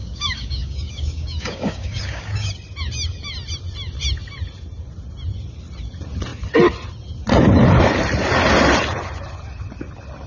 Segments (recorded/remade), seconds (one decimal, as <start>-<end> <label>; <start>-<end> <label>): 0.0-2.5 remade; 2.5-10.3 recorded